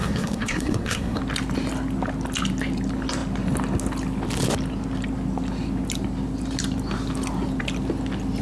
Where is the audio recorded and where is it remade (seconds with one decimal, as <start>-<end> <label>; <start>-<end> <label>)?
0.0-1.2 remade; 1.2-8.4 recorded